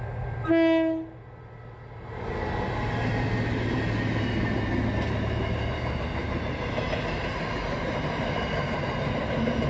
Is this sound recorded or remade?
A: recorded